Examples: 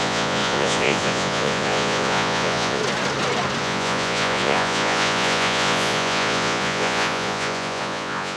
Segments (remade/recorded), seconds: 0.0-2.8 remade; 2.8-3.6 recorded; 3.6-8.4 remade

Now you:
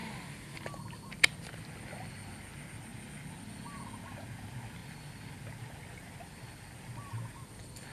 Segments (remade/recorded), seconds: 0.0-7.9 recorded

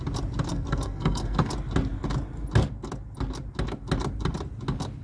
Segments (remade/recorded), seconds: 0.0-0.5 recorded; 0.5-1.5 remade; 1.5-5.0 recorded

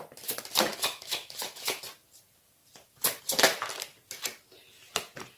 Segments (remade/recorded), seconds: 0.0-0.7 recorded; 0.7-1.8 remade; 1.8-5.4 recorded